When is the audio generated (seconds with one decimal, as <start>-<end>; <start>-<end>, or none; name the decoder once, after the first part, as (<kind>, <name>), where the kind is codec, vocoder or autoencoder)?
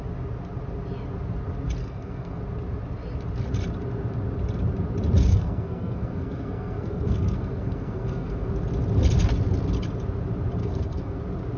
1.8-2.4 (codec, SNAC); 5.3-8.5; 10.6-11.2